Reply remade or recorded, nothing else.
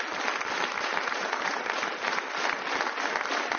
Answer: recorded